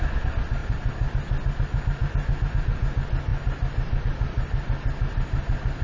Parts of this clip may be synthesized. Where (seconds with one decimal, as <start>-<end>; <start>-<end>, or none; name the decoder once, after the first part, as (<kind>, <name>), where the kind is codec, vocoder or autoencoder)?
0.6-1.1 (vocoder, BigVGAN v2)